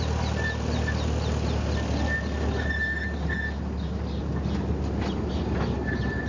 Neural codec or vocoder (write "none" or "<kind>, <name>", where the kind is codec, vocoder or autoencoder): none